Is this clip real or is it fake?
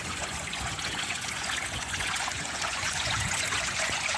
fake